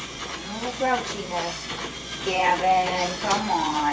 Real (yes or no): no